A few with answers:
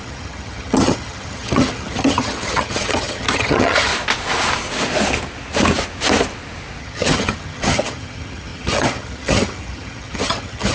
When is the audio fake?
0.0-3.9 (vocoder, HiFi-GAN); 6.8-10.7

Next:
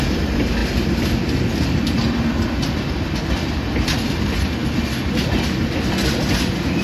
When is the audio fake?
none

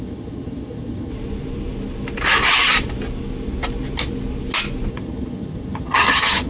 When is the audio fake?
0.0-1.1 (vocoder, HiFi-GAN); 4.9-6.5

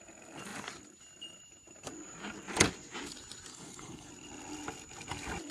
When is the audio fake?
3.5-4.1 (codec, HILCodec)

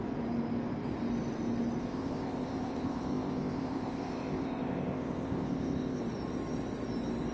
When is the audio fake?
1.8-6.0 (codec, ZipCodec)